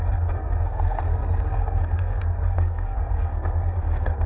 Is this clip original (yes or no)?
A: no